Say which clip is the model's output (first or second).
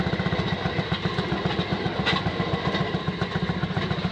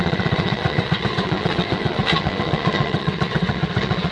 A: second